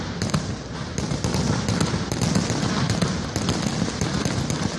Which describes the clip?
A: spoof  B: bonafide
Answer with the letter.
B